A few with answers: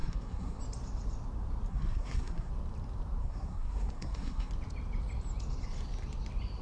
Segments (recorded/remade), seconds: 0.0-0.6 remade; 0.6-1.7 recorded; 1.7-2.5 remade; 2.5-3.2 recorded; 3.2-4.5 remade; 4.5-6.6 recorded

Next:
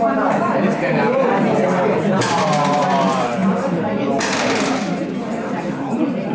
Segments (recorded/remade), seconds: 0.0-6.3 recorded

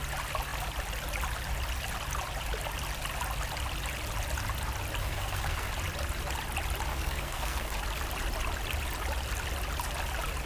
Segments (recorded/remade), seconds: 0.0-5.0 recorded; 5.0-5.7 remade; 5.7-6.9 recorded; 6.9-7.8 remade; 7.8-10.5 recorded

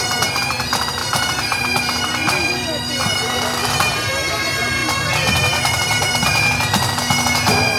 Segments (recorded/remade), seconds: 0.0-7.8 recorded

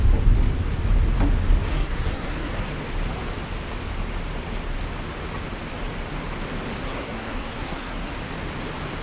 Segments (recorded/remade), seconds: 0.0-1.7 recorded; 1.7-2.7 remade; 2.7-6.8 recorded; 6.8-8.1 remade; 8.1-9.0 recorded

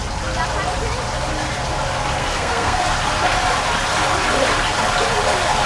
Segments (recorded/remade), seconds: 0.0-2.2 recorded; 2.2-2.8 remade; 2.8-5.7 recorded